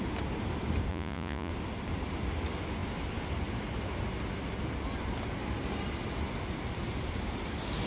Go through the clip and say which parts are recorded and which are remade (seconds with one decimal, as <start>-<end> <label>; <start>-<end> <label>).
0.0-0.9 recorded; 0.9-1.5 remade; 1.5-7.9 recorded